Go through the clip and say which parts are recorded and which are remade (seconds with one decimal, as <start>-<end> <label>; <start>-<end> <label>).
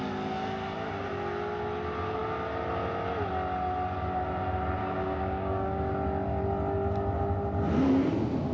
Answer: 0.0-4.8 recorded; 4.8-5.9 remade; 5.9-8.5 recorded